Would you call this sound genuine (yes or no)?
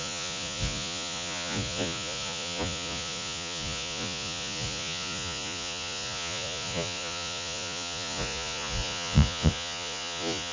no